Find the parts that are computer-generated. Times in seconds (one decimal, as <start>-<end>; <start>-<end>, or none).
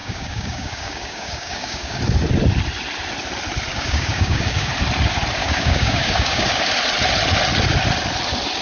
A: 0.0-2.0; 3.7-4.7; 5.4-6.7